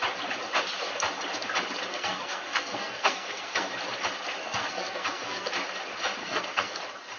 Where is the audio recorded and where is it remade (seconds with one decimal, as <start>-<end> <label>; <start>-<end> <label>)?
0.0-1.9 recorded; 1.9-3.7 remade; 3.7-4.4 recorded; 4.4-5.5 remade; 5.5-6.2 recorded; 6.2-6.8 remade; 6.8-7.2 recorded

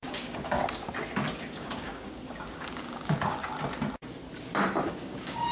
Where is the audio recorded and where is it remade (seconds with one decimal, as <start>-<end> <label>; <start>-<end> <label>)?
0.0-0.6 remade; 0.6-1.4 recorded; 1.4-3.4 remade; 3.4-4.8 recorded; 4.8-5.5 remade

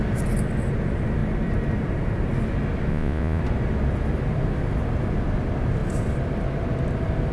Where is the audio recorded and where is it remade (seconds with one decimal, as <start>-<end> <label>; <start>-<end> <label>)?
0.0-2.9 recorded; 2.9-3.4 remade; 3.4-7.3 recorded

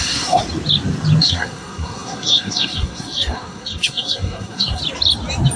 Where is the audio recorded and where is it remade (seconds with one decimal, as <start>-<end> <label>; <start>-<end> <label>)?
0.0-0.4 remade; 0.4-1.2 recorded; 1.2-4.8 remade; 4.8-5.6 recorded

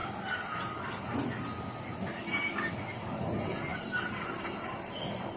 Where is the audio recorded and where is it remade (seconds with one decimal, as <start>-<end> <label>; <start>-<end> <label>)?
0.0-5.4 recorded

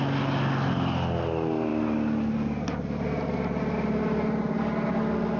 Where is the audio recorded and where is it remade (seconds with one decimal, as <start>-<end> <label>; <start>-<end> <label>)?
0.0-5.4 recorded

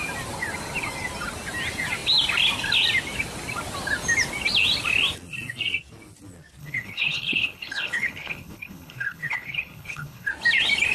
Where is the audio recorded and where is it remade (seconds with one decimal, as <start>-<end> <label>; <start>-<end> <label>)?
0.0-6.6 recorded; 6.6-10.3 remade; 10.3-10.9 recorded